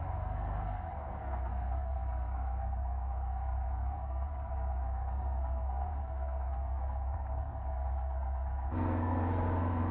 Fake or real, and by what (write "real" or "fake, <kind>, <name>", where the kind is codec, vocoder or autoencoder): fake, codec, SNAC